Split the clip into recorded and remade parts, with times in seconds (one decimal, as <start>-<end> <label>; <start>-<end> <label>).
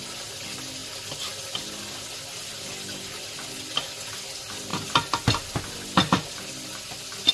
0.0-7.3 recorded